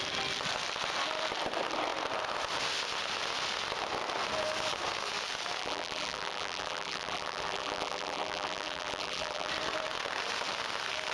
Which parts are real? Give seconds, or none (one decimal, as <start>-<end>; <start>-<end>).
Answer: 0.0-5.6; 9.5-11.1